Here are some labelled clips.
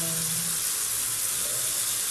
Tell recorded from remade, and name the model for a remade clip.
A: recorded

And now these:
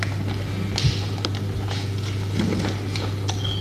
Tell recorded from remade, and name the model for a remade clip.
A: recorded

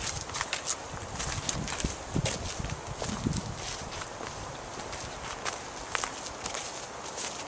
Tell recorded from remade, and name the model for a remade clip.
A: recorded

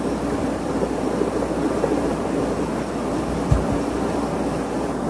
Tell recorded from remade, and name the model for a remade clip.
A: recorded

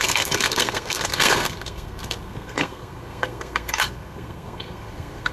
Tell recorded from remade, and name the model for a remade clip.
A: remade, codec, SNAC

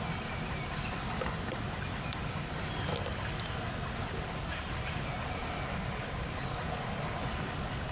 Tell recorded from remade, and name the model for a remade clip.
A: recorded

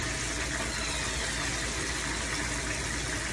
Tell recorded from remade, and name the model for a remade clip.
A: recorded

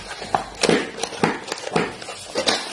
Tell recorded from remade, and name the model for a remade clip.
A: recorded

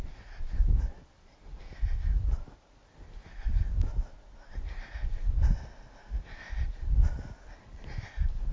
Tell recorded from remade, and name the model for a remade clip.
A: recorded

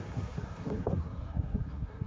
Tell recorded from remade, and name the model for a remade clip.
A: remade, codec, SNAC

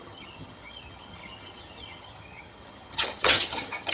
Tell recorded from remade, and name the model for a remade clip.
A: remade, vocoder, HiFi-GAN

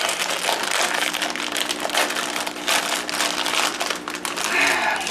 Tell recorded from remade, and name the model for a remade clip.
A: recorded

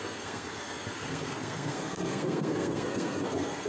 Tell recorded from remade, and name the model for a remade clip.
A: remade, codec, SNAC